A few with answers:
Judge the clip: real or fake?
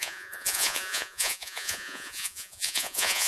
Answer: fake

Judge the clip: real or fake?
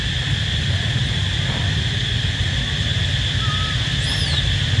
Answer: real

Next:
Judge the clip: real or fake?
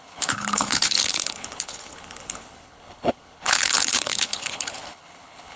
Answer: fake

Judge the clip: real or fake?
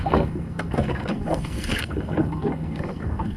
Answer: fake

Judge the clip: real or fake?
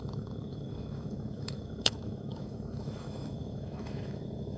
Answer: fake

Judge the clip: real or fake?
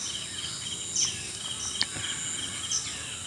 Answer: real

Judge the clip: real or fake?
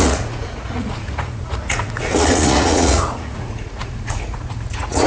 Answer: fake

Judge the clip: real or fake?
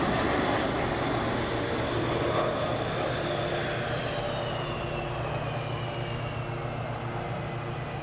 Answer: real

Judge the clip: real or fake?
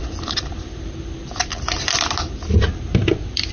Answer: real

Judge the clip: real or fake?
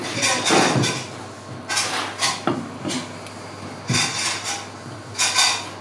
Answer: real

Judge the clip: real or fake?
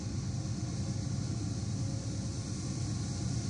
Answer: real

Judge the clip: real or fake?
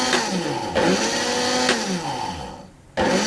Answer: real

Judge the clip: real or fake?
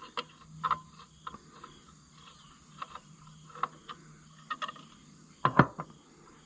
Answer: real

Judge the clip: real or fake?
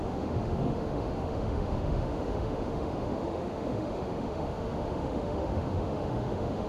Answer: fake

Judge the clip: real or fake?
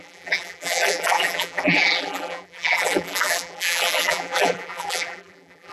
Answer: fake